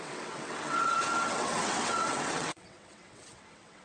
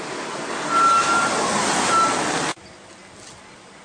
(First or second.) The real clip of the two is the second